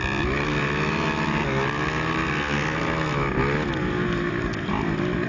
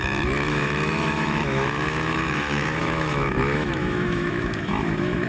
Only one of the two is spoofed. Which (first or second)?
second